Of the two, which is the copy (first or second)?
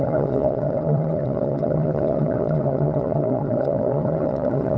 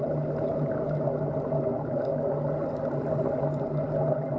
first